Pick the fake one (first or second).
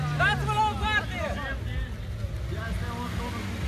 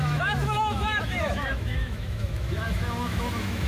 second